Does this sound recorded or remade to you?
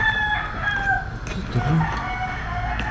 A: recorded